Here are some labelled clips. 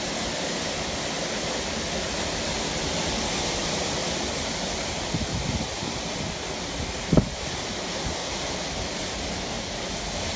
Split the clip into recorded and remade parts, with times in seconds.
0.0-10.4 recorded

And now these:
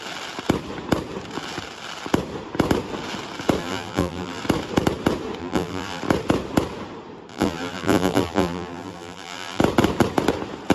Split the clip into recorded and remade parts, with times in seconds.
0.0-3.6 recorded; 3.6-4.4 remade; 4.4-5.4 recorded; 5.4-6.0 remade; 6.0-7.3 recorded; 7.3-9.6 remade; 9.6-10.7 recorded

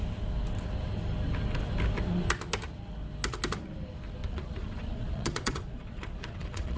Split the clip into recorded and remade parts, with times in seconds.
0.0-4.2 recorded; 4.2-6.8 remade

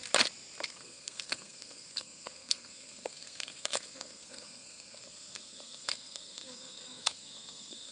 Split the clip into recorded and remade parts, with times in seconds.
0.0-0.7 recorded; 0.7-7.9 remade

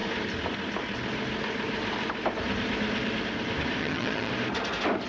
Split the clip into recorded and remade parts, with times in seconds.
0.0-3.8 recorded; 3.8-4.3 remade; 4.3-5.1 recorded